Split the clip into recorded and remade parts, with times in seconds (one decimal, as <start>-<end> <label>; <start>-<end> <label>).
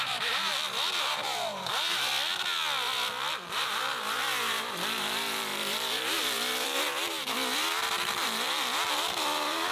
0.0-0.5 remade; 0.5-1.0 recorded; 1.0-2.1 remade; 2.1-3.3 recorded; 3.3-9.7 remade